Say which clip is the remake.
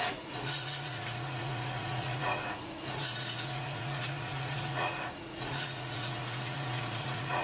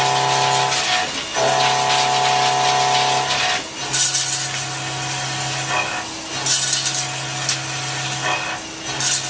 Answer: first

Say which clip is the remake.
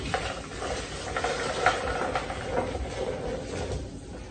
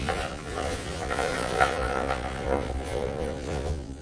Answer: second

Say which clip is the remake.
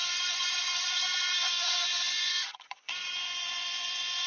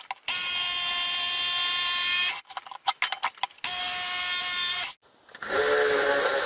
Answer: first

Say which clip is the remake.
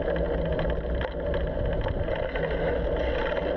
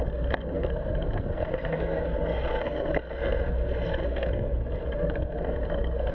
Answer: second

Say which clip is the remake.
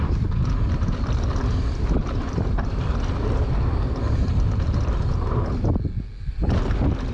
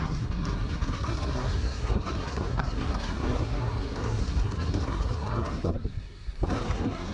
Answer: second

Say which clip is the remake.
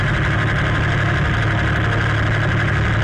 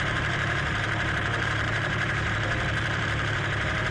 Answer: second